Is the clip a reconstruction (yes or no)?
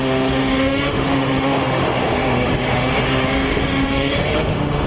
yes